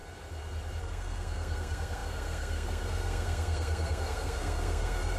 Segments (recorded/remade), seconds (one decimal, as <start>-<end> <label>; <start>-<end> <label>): 0.0-0.8 recorded; 0.8-5.2 remade